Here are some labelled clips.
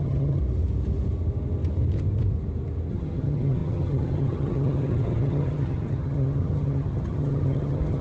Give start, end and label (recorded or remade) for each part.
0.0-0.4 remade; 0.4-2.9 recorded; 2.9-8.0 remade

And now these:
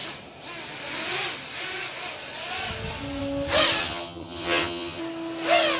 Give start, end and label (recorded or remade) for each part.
0.0-3.8 recorded; 3.8-5.0 remade; 5.0-5.8 recorded

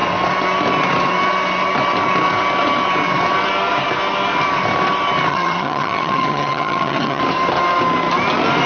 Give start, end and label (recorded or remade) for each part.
0.0-5.3 recorded; 5.3-7.2 remade; 7.2-8.7 recorded